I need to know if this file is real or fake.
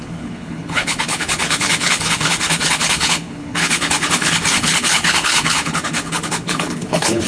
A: fake